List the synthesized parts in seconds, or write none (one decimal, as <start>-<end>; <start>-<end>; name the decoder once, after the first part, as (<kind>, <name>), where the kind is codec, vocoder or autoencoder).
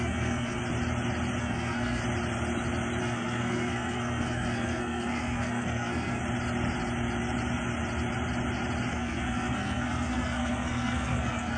0.0-0.6 (codec, SNAC); 1.4-2.0; 3.0-6.2; 8.9-11.6